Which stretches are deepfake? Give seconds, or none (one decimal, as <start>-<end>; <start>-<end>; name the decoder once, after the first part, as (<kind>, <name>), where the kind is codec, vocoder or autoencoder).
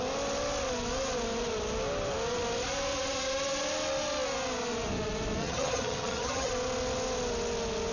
5.4-6.5 (vocoder, HiFi-GAN)